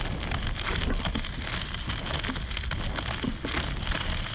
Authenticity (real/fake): real